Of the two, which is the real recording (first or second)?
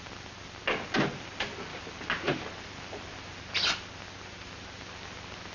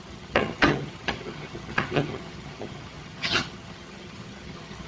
first